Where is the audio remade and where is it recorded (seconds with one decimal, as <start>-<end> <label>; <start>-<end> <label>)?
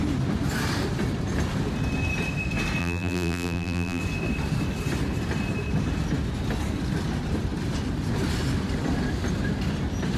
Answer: 0.0-2.8 recorded; 2.8-4.0 remade; 4.0-10.2 recorded